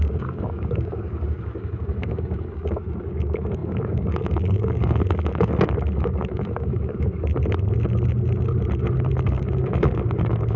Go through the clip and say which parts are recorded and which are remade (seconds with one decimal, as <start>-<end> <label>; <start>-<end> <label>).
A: 0.0-7.1 remade; 7.1-9.1 recorded; 9.1-10.6 remade

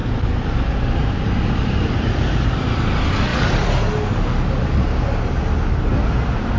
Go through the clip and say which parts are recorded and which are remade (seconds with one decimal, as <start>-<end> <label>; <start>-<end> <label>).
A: 0.0-6.6 recorded

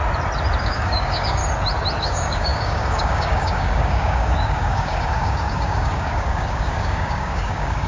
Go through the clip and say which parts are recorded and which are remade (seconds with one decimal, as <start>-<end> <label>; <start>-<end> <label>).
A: 0.0-0.6 recorded; 0.6-1.4 remade; 1.4-2.0 recorded; 2.0-7.9 remade